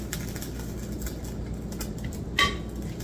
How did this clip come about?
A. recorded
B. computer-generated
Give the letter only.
A